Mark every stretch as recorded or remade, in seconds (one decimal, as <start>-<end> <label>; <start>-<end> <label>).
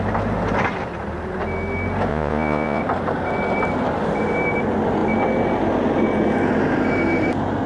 0.0-2.1 recorded; 2.1-2.8 remade; 2.8-7.7 recorded